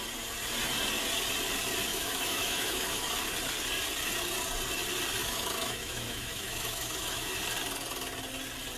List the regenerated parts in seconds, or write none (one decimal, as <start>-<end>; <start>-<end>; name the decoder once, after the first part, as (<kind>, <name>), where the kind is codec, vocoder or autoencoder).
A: 1.9-3.1 (autoencoder, DAC-VAE); 5.2-7.4